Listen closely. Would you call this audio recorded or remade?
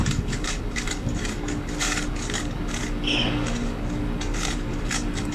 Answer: remade